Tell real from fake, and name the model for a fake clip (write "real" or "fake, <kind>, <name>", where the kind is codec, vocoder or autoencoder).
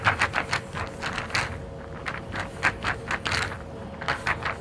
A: real